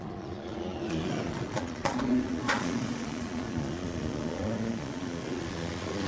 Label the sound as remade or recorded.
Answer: remade